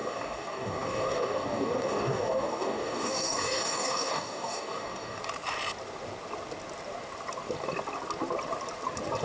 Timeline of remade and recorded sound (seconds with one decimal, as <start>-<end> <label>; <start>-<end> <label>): 0.0-5.2 remade; 5.2-9.2 recorded